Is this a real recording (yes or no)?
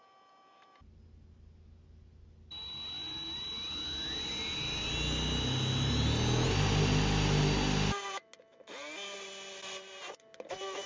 yes